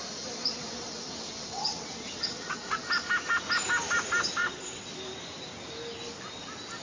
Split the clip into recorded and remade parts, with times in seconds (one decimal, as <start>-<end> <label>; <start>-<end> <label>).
0.0-0.6 recorded; 0.6-2.8 remade; 2.8-4.4 recorded; 4.4-4.9 remade; 4.9-6.8 recorded